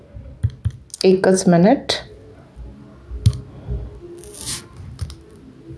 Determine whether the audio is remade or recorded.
recorded